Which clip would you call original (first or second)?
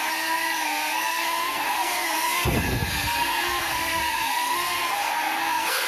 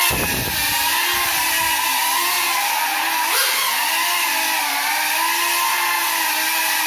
second